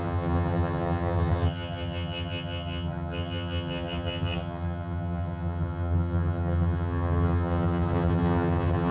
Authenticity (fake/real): fake